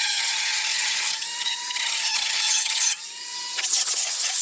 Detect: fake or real fake